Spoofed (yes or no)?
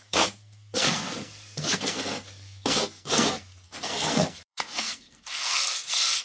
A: yes